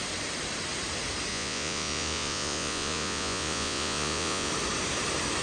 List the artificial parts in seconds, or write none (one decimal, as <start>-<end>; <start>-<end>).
1.3-4.5